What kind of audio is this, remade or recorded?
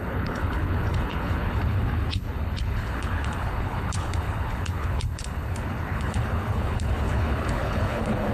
remade